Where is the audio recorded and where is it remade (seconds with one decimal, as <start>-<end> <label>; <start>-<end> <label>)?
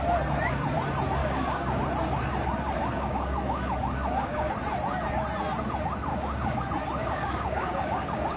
0.0-1.2 recorded; 1.2-1.8 remade; 1.8-2.8 recorded; 2.8-4.5 remade; 4.5-6.1 recorded; 6.1-6.6 remade; 6.6-7.0 recorded; 7.0-8.4 remade